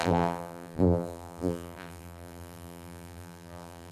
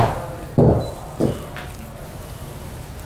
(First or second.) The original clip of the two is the second